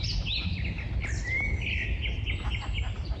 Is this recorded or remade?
recorded